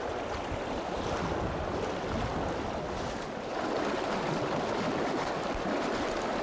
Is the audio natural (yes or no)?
yes